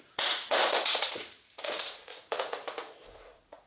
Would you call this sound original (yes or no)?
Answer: no